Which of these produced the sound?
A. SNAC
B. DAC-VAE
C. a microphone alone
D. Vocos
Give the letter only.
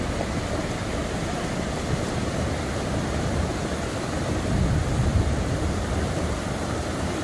C